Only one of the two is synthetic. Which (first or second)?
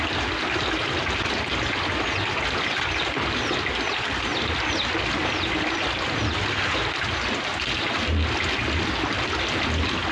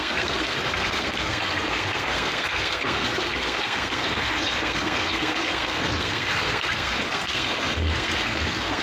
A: second